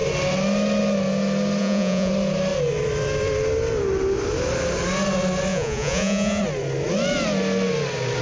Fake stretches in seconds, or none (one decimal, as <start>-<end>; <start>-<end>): 1.6-2.1; 5.5-6.4